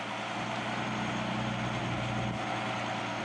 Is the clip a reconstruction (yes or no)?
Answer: no